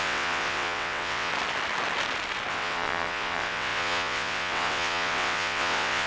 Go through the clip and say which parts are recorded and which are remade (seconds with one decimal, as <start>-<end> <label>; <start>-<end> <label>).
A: 0.0-1.3 remade; 1.3-2.5 recorded; 2.5-6.1 remade